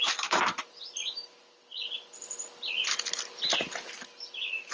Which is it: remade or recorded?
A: recorded